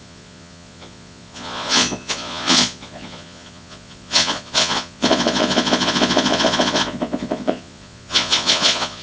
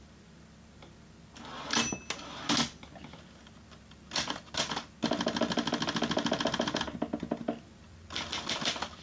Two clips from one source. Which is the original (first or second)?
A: second